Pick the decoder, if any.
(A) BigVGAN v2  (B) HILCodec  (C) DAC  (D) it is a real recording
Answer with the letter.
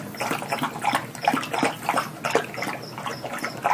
D